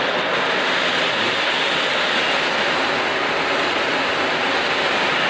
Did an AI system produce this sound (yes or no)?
no